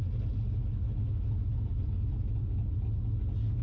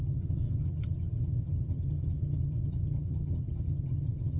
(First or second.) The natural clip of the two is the first